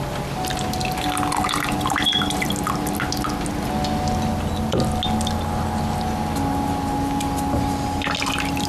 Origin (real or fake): real